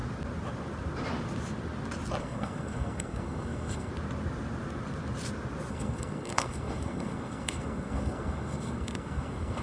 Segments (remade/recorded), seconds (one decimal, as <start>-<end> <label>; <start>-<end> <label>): 0.0-2.2 recorded; 2.2-3.9 remade; 3.9-5.7 recorded; 5.7-9.6 remade